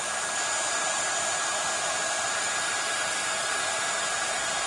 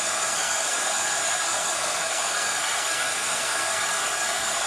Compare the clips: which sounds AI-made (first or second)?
second